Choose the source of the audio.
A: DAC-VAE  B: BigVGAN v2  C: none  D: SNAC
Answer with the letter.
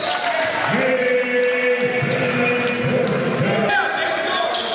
C